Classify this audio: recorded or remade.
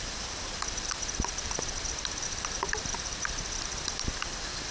remade